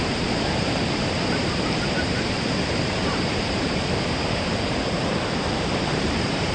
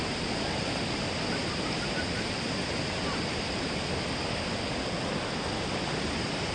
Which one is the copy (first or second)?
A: first